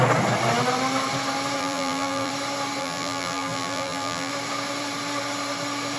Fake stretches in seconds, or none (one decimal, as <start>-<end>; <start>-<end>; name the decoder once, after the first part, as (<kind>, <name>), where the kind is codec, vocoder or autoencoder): 1.6-2.3 (vocoder, BigVGAN v2); 2.8-4.3